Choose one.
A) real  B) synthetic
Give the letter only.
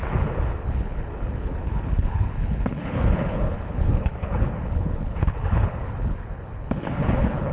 B